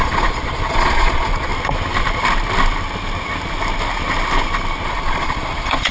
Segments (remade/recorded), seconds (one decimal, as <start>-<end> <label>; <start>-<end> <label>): 0.0-1.5 remade; 1.5-4.9 recorded; 4.9-5.9 remade